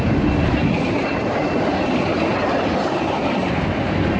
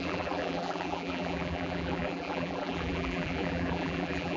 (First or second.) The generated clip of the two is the second